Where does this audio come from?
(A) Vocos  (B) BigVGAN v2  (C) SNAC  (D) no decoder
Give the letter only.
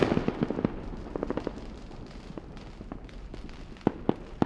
D